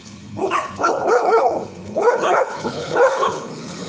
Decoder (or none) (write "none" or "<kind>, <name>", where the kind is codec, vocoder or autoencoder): codec, HILCodec